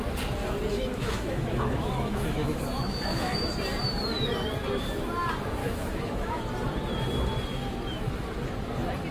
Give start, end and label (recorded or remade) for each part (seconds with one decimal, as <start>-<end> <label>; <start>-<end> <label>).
0.0-0.7 recorded; 0.7-3.5 remade; 3.5-5.6 recorded; 5.6-6.4 remade; 6.4-9.1 recorded